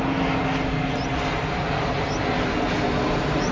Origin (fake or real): real